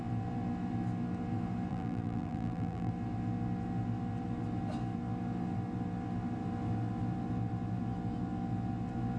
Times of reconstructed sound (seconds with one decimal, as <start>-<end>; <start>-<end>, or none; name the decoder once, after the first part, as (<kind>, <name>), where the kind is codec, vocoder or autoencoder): 1.7-2.9 (vocoder, BigVGAN v2)